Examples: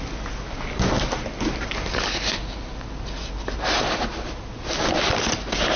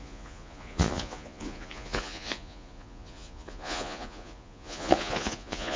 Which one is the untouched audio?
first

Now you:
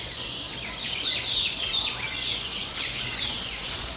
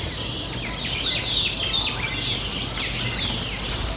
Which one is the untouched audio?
second